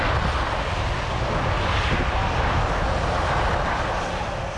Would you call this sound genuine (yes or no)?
yes